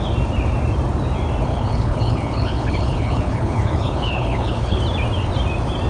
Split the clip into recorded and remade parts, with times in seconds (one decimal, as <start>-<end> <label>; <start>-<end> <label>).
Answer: 0.0-1.5 recorded; 1.5-4.8 remade; 4.8-5.9 recorded